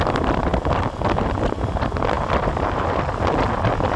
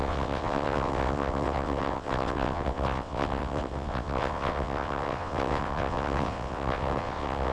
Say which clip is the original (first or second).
first